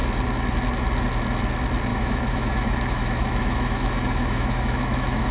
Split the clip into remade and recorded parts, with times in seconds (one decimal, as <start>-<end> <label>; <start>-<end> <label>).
0.0-1.9 recorded; 1.9-5.3 remade